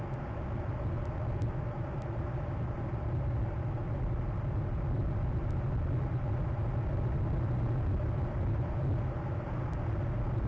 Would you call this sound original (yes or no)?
yes